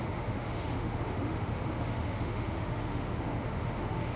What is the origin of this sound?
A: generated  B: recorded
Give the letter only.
A